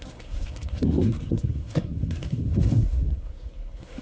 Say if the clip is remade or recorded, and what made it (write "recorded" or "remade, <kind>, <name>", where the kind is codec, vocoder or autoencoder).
remade, codec, SNAC